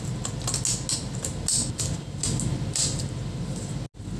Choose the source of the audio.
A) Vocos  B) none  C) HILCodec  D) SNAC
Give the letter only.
B